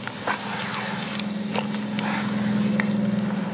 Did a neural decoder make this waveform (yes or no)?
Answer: no